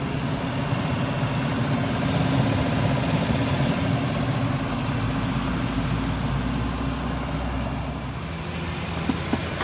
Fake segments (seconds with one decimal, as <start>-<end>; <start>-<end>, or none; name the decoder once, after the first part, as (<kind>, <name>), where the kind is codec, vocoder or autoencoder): none